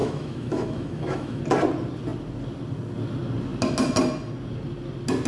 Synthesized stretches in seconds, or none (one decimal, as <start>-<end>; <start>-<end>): 0.0-1.4